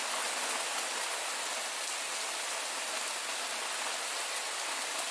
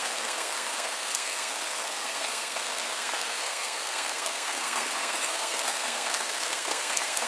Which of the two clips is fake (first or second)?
second